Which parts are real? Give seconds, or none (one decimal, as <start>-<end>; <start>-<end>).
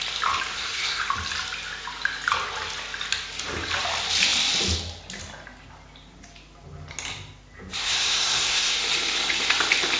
0.0-0.5; 1.0-7.8; 8.8-10.0